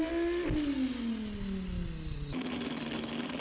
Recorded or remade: recorded